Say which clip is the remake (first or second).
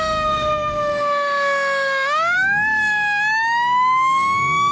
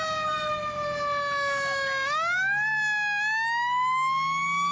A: first